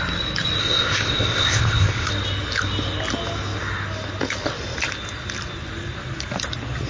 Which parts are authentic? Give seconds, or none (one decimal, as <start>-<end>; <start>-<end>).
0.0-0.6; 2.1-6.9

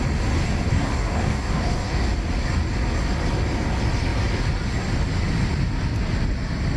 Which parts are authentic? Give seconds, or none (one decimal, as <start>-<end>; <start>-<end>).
0.0-0.7; 2.1-6.8

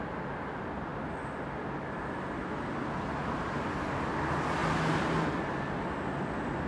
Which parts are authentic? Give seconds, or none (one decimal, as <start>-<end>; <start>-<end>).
0.0-6.7